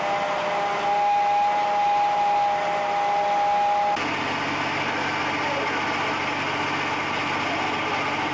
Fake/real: real